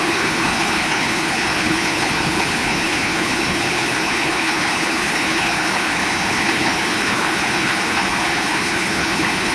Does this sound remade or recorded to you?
remade